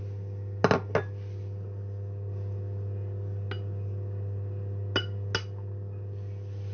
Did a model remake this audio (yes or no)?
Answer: no